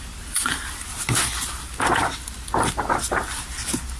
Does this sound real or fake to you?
fake